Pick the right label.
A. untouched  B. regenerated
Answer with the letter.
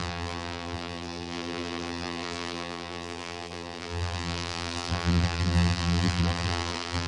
B